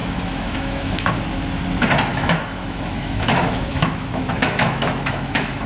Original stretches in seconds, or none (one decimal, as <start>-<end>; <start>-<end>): 1.1-2.1